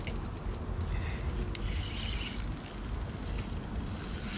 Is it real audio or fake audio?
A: real